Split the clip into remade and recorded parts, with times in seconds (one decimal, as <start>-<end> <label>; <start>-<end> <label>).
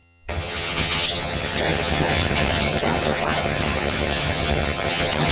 0.0-5.3 remade